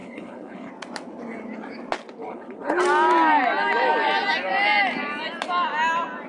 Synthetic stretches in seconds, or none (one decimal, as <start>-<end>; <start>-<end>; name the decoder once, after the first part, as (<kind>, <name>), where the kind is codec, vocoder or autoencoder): 0.0-0.7 (codec, HILCodec); 2.2-2.8